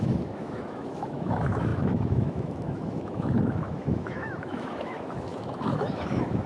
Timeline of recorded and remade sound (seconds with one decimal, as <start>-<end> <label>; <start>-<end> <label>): 0.0-6.5 remade